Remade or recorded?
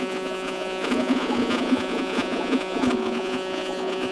remade